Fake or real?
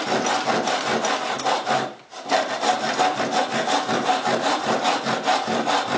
real